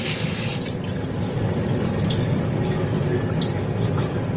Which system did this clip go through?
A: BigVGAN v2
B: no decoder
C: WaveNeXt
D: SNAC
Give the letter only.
B